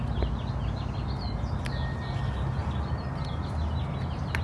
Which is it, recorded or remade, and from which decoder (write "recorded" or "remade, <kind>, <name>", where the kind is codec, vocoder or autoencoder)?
recorded